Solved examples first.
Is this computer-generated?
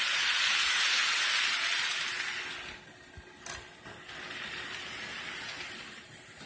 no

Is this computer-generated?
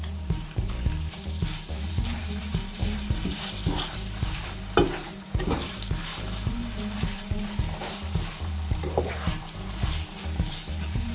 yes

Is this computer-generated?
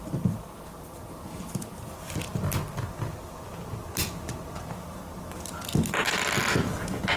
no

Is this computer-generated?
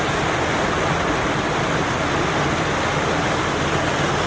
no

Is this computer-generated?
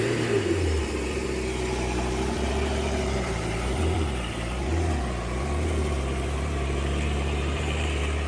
yes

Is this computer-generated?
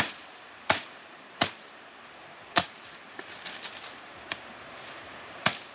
yes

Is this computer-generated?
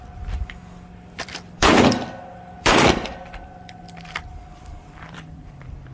yes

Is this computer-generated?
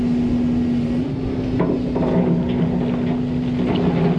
no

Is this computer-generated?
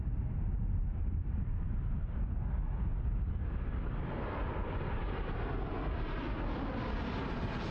no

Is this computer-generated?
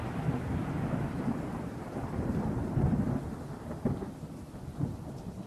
yes